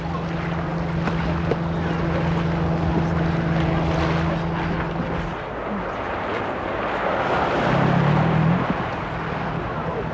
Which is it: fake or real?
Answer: real